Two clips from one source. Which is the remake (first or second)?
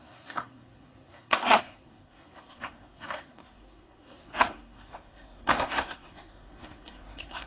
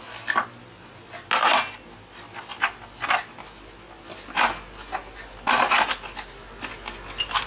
first